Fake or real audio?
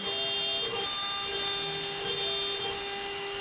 real